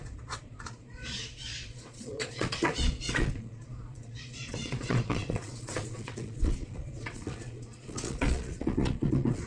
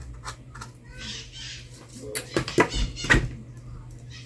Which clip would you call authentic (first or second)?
second